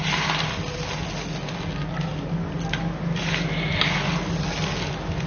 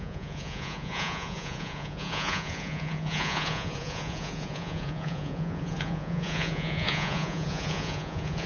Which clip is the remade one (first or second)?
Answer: second